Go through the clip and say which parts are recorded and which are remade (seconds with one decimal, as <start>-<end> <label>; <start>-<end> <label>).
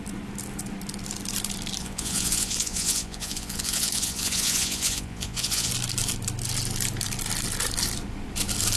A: 0.0-1.8 recorded; 1.8-5.7 remade; 5.7-8.8 recorded